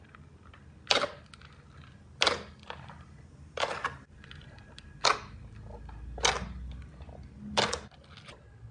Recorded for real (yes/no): yes